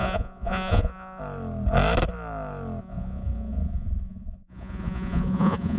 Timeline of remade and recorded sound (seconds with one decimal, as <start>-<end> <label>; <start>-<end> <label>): 0.0-1.2 remade; 1.2-2.8 recorded; 2.8-5.8 remade